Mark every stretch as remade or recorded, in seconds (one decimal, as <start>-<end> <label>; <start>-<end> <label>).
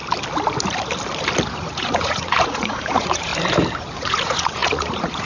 0.0-1.5 recorded; 1.5-3.3 remade; 3.3-3.9 recorded; 3.9-5.3 remade